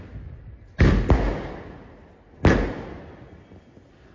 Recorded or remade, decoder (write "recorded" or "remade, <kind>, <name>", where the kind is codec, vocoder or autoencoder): recorded